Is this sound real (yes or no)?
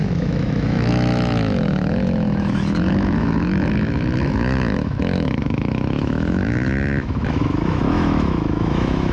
no